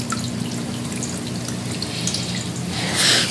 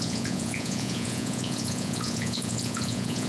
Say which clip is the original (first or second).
first